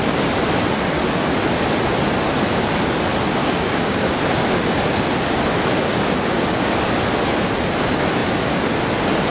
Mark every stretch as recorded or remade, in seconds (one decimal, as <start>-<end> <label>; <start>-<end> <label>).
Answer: 0.0-3.4 recorded; 3.4-4.1 remade; 4.1-9.3 recorded